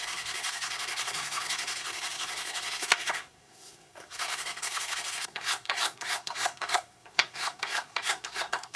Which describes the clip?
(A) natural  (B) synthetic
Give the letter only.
B